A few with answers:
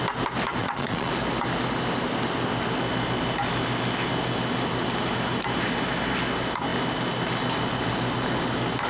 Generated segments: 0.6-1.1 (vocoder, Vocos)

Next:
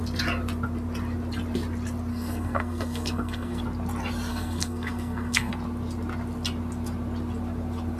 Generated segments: 2.1-3.6 (codec, SNAC); 4.3-5.5

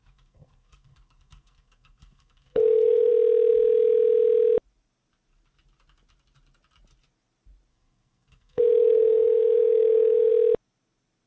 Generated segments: 0.0-3.1 (codec, SNAC); 7.7-10.3

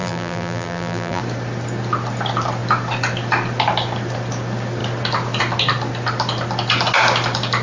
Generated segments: 0.0-1.2 (vocoder, BigVGAN v2)

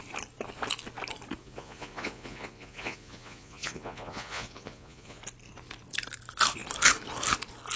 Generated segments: 1.4-5.2 (vocoder, Vocos)

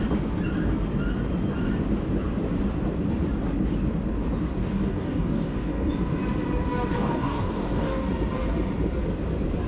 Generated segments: 4.6-5.9 (codec, DAC); 6.9-8.1

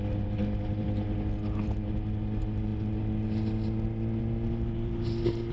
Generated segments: none

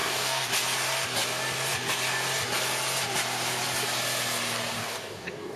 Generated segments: 0.0-0.5 (codec, DAC); 4.8-5.6